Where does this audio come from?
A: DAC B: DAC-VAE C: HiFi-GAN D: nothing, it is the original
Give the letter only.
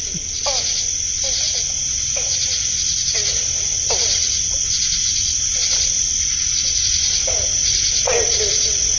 D